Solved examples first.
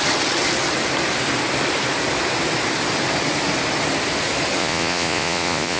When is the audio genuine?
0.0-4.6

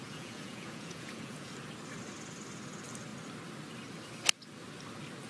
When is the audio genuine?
1.5-5.3

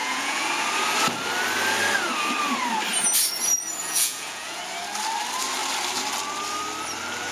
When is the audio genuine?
0.5-3.8; 4.6-7.3